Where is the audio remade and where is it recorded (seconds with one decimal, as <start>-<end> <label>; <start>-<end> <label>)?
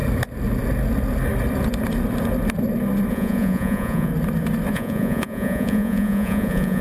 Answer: 0.0-3.1 recorded; 3.1-4.1 remade; 4.1-4.7 recorded; 4.7-6.8 remade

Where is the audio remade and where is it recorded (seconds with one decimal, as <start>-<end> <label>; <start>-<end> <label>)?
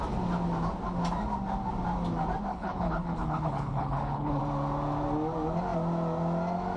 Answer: 0.0-2.5 recorded; 2.5-4.4 remade; 4.4-6.8 recorded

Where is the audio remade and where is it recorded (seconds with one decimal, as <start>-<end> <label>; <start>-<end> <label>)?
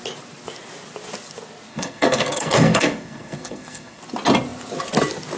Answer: 0.0-1.7 recorded; 1.7-4.0 remade; 4.0-5.4 recorded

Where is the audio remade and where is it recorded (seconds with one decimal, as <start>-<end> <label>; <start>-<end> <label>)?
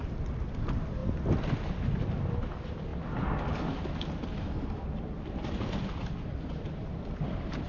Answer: 0.0-7.7 recorded